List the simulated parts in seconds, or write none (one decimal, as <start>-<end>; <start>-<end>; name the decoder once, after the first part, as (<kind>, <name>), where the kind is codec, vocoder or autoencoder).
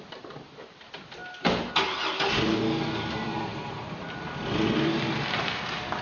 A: 0.0-1.2 (vocoder, BigVGAN v2); 2.9-6.0